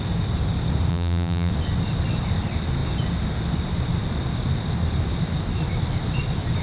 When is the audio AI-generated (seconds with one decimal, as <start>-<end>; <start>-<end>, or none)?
0.9-1.5